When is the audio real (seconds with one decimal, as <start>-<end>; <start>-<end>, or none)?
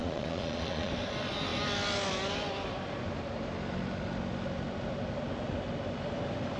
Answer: 0.9-6.6